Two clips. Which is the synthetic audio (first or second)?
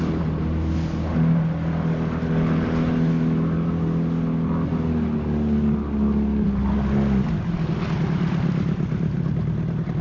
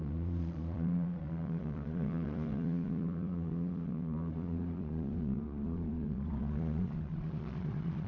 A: second